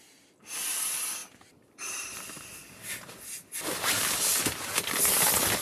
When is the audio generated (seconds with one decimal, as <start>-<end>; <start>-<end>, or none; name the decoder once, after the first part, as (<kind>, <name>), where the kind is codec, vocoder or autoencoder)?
none